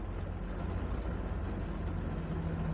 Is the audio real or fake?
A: real